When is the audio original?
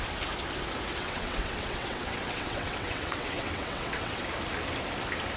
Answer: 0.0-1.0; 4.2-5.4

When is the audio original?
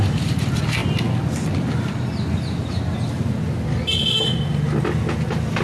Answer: 0.0-5.6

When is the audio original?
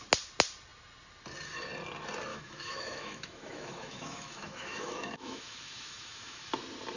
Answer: 0.0-2.3; 6.5-7.0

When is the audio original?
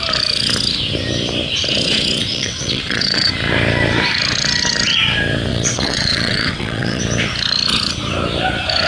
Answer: 0.0-2.3; 3.3-5.5; 7.0-8.9